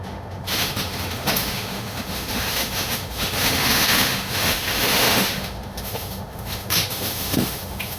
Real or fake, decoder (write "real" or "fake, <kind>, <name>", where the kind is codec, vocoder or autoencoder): fake, autoencoder, DAC-VAE